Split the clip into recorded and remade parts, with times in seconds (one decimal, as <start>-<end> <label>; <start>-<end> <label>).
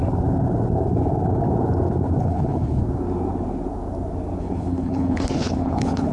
0.0-2.2 recorded; 2.2-2.8 remade; 2.8-4.4 recorded; 4.4-6.1 remade